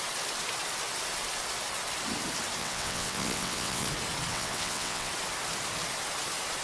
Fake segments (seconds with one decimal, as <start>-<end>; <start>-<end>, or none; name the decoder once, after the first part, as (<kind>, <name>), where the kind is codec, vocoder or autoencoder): 2.6-3.9 (vocoder, WaveNeXt); 4.3-5.1